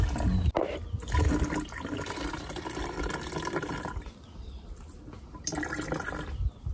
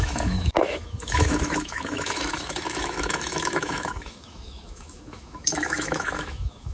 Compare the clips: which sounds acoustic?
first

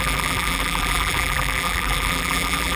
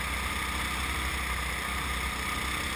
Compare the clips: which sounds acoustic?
second